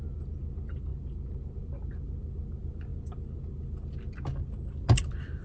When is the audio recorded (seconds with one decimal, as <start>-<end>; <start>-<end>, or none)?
0.0-5.4